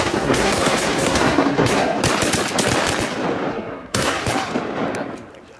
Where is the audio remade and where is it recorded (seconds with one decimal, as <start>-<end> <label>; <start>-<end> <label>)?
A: 0.0-2.0 remade; 2.0-3.5 recorded; 3.5-4.2 remade; 4.2-5.6 recorded